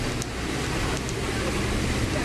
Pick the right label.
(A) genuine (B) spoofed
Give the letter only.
A